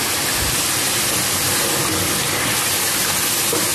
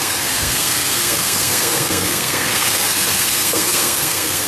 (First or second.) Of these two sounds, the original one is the first